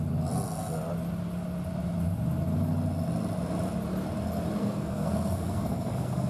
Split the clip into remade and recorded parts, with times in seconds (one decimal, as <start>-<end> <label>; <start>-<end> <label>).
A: 0.0-4.6 recorded; 4.6-6.3 remade